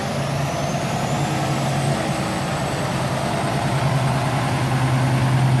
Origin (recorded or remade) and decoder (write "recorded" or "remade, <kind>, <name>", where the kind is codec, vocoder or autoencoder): recorded